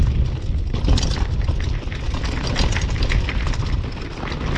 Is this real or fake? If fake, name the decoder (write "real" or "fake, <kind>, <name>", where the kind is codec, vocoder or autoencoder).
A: real